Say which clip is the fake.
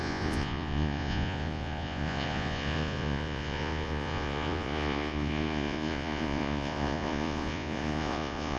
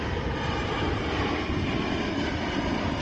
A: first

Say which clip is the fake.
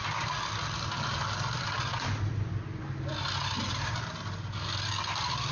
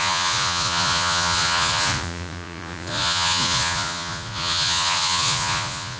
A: second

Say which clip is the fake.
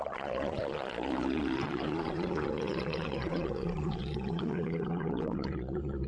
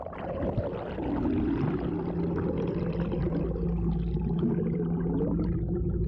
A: first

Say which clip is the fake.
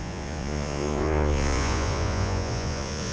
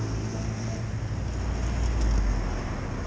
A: first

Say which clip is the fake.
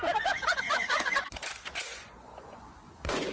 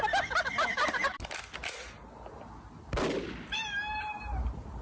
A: first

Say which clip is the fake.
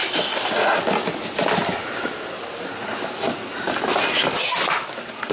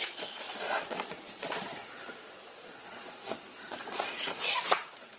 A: second